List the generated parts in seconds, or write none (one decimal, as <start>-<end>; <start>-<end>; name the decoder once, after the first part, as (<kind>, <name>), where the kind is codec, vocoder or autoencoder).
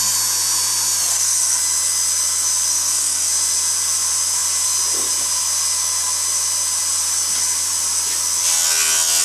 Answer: 1.1-1.6 (codec, SNAC); 2.7-3.3